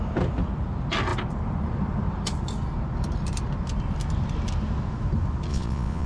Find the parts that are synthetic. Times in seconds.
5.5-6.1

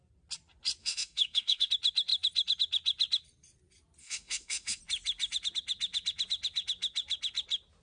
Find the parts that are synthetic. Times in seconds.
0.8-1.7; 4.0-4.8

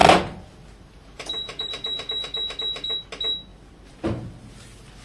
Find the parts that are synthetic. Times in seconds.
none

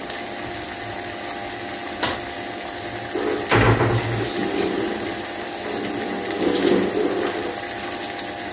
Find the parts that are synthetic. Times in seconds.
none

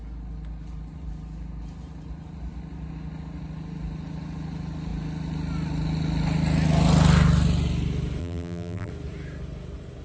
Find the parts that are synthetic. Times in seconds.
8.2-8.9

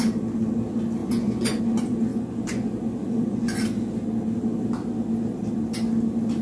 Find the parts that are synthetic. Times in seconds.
1.0-1.6; 2.1-3.6